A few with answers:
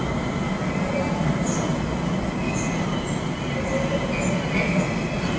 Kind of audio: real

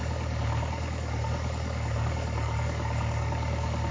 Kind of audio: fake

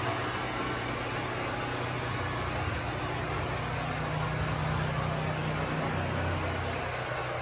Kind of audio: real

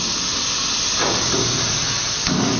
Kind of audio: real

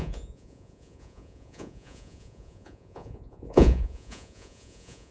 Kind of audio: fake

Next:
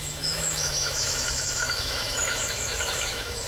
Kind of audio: fake